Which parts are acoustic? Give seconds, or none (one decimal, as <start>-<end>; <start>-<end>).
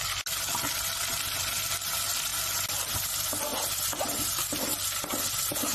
0.0-5.7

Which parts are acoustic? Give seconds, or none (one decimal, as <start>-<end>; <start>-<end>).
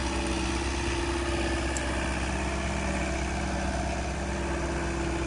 0.0-5.3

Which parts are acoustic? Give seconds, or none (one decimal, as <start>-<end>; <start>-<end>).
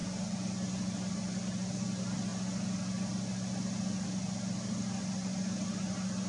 0.0-6.3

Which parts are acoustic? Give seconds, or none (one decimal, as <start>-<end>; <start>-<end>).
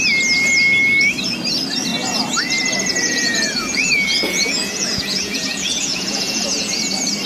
0.0-2.9; 6.7-7.3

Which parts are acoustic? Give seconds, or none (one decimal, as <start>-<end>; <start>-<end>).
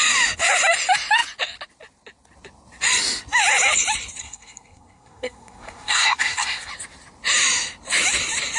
0.0-4.2; 6.7-8.6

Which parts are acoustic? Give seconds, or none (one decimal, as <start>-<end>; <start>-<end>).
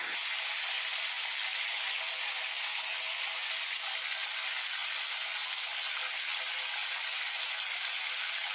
0.0-8.5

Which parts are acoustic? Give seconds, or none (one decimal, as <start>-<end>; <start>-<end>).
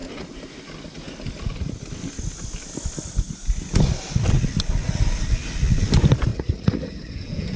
0.0-6.3; 7.1-7.6